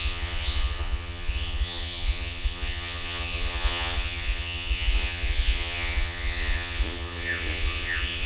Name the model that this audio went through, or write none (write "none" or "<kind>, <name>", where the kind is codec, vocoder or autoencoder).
vocoder, Vocos